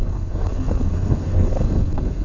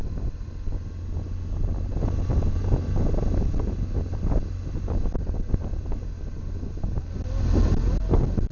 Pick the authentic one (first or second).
second